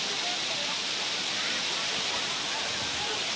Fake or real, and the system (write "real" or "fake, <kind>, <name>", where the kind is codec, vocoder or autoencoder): real